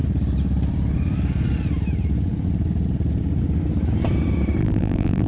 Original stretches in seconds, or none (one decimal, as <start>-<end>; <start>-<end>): 0.0-4.6

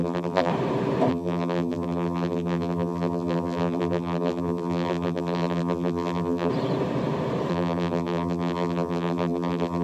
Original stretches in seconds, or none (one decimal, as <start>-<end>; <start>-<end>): 0.5-1.1; 6.5-7.5

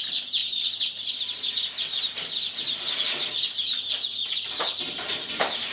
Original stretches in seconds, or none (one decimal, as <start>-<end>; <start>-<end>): 0.0-4.2

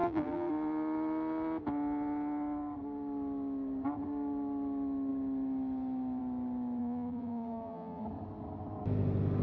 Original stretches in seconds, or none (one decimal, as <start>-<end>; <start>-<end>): 0.5-6.8; 8.0-9.4

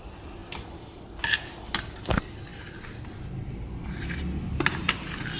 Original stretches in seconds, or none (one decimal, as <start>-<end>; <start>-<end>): 0.0-0.4; 1.1-5.4